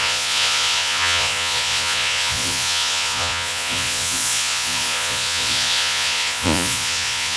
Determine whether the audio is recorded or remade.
remade